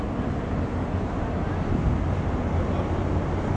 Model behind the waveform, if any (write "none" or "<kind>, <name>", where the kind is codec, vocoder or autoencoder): none